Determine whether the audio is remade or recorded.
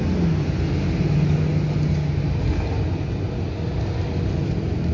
recorded